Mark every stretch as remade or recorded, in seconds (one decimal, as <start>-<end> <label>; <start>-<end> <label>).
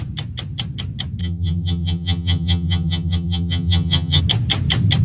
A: 0.0-1.2 recorded; 1.2-4.2 remade; 4.2-5.0 recorded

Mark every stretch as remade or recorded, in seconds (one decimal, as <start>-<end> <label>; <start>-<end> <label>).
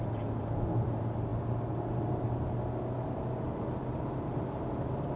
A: 0.0-5.2 recorded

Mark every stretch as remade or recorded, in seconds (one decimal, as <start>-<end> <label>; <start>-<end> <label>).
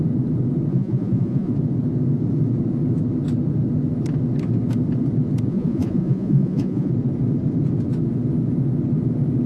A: 0.0-0.7 recorded; 0.7-1.5 remade; 1.5-5.5 recorded; 5.5-6.9 remade; 6.9-9.5 recorded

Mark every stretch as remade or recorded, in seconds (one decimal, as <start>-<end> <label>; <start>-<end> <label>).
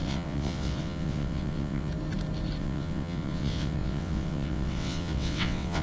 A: 0.0-1.9 remade; 1.9-2.6 recorded; 2.6-5.8 remade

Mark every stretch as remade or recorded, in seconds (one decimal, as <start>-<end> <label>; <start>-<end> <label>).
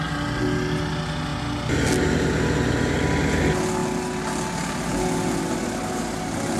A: 0.0-6.6 recorded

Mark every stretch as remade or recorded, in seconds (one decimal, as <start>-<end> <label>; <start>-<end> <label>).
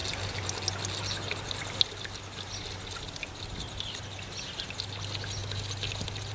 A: 0.0-6.3 recorded